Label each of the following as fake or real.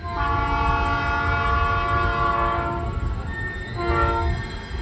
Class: real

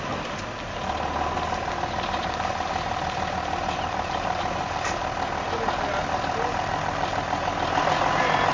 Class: real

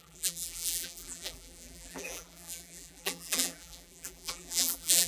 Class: fake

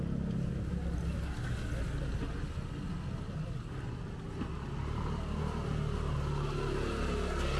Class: real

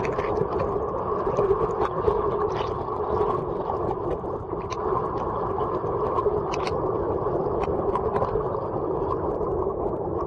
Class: real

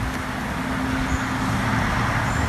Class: real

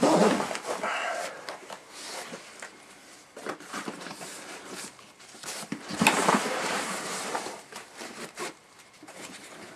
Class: fake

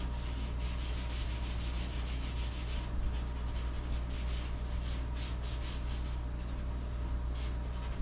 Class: real